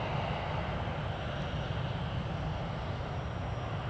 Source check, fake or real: real